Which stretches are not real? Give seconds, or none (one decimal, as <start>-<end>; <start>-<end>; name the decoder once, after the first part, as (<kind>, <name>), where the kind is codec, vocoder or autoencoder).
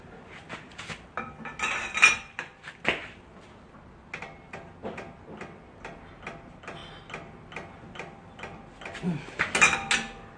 none